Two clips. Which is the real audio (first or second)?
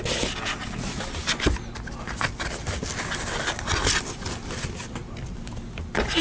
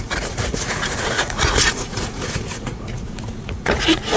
first